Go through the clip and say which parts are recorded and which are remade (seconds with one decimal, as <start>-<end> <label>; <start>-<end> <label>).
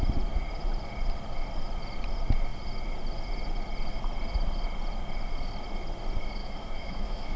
0.0-6.4 recorded; 6.4-7.4 remade